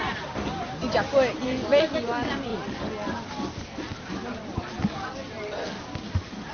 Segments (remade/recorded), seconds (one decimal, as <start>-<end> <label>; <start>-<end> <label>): 0.0-6.5 recorded